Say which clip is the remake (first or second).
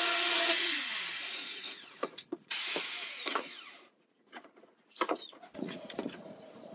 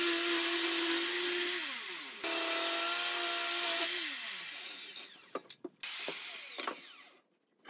first